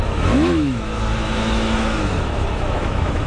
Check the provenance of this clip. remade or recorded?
remade